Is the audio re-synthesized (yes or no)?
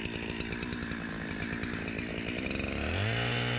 no